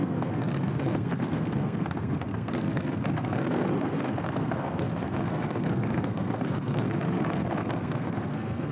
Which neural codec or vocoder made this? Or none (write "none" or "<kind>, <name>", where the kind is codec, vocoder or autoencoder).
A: codec, SNAC